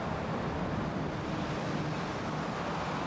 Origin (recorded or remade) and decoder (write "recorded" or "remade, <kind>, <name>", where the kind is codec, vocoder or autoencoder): recorded